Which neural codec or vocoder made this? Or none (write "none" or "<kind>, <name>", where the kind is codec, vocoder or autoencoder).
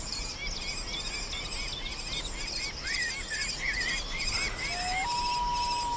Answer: none